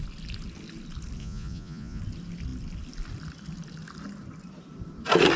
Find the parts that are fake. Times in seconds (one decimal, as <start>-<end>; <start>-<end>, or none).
1.2-2.0